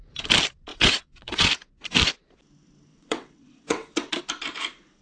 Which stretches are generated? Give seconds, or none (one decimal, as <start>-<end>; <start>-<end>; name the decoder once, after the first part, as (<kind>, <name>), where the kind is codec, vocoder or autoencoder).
0.7-1.5 (vocoder, WaveNeXt); 2.9-4.2